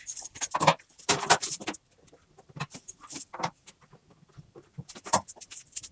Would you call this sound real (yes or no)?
no